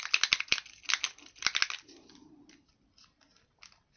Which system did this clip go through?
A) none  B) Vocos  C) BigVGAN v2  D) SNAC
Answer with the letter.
A